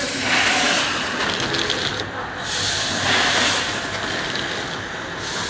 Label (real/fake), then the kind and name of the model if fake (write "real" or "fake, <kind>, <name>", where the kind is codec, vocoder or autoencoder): real